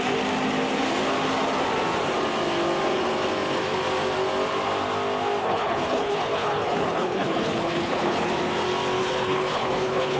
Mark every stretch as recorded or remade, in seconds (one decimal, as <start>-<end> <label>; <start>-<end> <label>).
0.0-5.4 recorded; 5.4-8.3 remade; 8.3-9.0 recorded; 9.0-10.2 remade